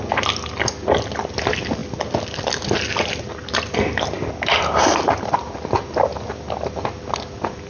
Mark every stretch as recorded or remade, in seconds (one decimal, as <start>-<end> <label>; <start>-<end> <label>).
0.0-7.7 recorded